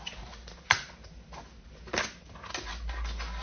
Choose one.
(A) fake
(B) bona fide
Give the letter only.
B